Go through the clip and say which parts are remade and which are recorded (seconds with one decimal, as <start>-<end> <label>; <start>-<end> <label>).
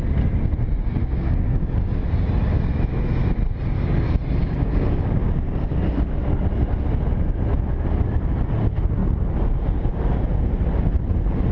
0.0-1.0 recorded; 1.0-1.8 remade; 1.8-4.4 recorded; 4.4-6.2 remade; 6.2-11.5 recorded